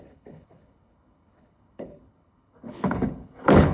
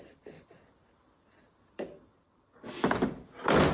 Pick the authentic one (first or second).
second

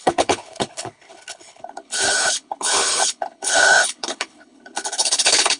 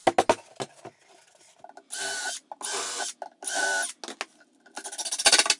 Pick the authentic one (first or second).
second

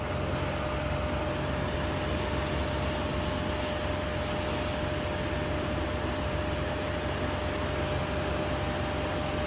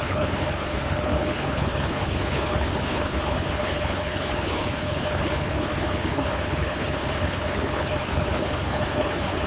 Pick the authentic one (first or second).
first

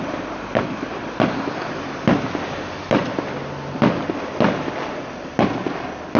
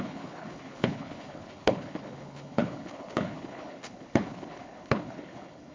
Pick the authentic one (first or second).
first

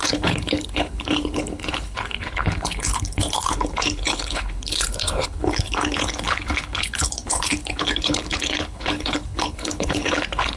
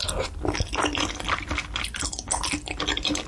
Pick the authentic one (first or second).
second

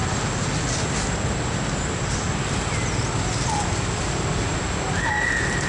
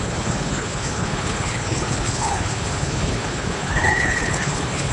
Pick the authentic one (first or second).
first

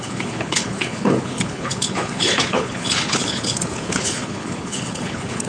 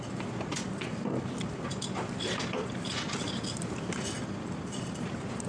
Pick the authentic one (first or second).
second